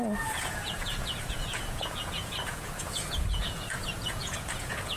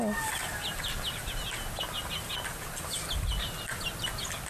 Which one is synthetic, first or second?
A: first